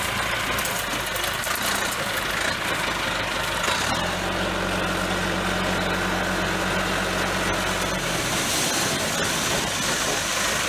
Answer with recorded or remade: recorded